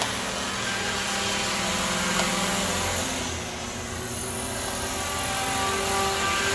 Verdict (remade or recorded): recorded